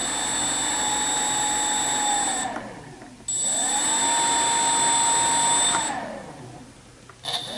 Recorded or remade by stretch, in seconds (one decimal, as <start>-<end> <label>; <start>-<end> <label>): 0.0-7.6 recorded